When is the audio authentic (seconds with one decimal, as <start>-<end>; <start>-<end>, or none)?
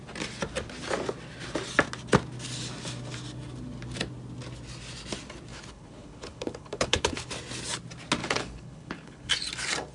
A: 0.0-5.5; 7.3-8.2; 9.3-9.9